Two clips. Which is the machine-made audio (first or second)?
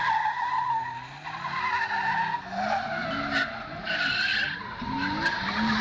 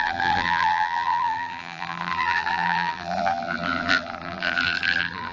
second